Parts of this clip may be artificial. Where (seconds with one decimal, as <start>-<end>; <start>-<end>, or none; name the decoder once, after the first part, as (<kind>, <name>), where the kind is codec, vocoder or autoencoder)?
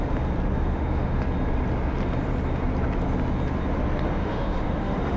0.5-1.2 (autoencoder, DAC-VAE); 4.2-5.2